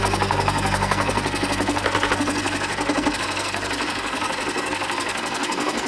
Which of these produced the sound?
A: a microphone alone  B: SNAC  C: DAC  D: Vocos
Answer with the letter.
B